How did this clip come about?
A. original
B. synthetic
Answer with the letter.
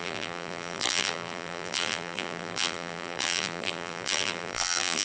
B